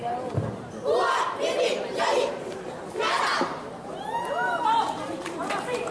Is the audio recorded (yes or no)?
no